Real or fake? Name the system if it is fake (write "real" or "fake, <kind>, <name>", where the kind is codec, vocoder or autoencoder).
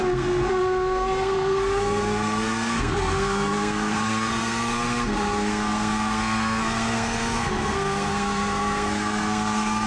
fake, codec, SNAC